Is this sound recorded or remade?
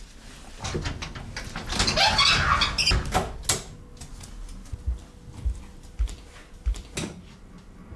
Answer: recorded